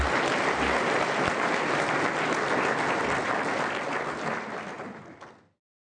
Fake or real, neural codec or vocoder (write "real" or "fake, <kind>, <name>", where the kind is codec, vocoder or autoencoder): real